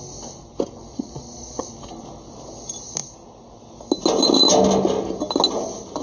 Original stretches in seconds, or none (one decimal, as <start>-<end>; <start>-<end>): 0.0-0.9; 1.6-6.0